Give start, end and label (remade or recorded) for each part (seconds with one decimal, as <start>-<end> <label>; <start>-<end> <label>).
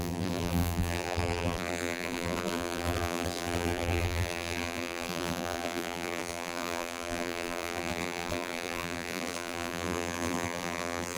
0.0-11.2 remade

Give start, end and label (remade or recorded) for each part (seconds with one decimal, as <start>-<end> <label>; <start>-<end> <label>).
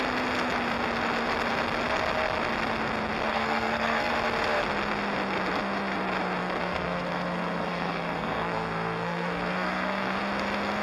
0.0-3.3 recorded; 3.3-4.1 remade; 4.1-6.4 recorded; 6.4-10.2 remade; 10.2-10.8 recorded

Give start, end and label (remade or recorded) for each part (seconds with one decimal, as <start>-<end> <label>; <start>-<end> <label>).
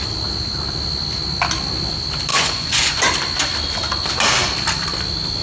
0.0-2.3 recorded; 2.3-3.1 remade; 3.1-5.4 recorded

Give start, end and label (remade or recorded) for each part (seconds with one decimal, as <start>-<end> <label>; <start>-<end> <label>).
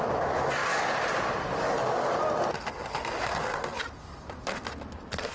0.0-5.3 recorded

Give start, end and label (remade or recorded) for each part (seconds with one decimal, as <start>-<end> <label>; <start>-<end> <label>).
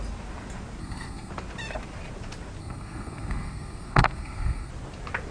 0.0-0.8 recorded; 0.8-1.3 remade; 1.3-2.6 recorded; 2.6-4.7 remade; 4.7-5.3 recorded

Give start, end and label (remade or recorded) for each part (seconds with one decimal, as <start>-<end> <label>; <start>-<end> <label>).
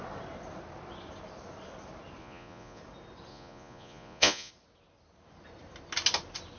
0.0-2.2 recorded; 2.2-2.8 remade; 2.8-3.3 recorded; 3.3-4.5 remade; 4.5-6.6 recorded